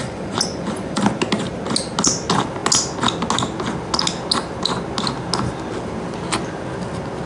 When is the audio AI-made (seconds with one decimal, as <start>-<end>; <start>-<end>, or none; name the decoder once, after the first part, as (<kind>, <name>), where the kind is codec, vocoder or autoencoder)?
0.0-1.0 (vocoder, Vocos)